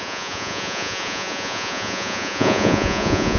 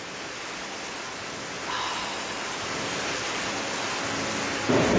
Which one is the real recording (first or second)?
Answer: second